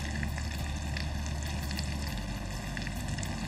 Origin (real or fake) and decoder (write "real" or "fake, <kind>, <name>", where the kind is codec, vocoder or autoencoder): real